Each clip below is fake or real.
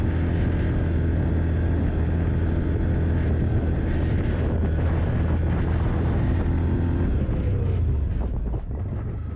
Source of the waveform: real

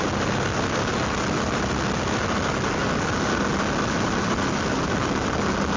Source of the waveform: real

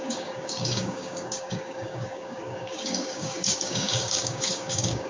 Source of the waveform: fake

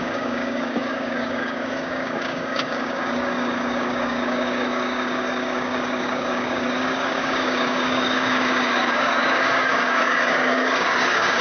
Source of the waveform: fake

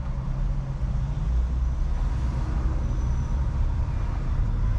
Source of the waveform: real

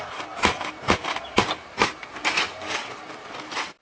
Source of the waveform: real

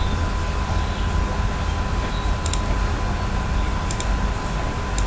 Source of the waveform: real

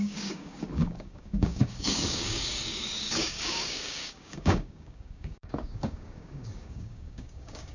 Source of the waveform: fake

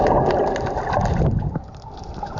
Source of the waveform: real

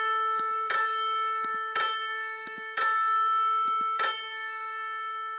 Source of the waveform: fake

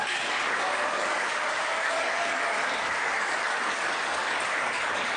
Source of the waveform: fake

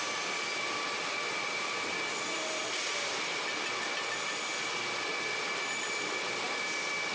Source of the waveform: real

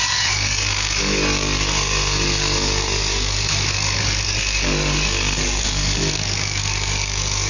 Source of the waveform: fake